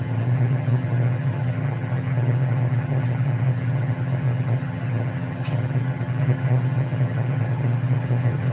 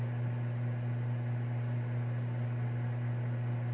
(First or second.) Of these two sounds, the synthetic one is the first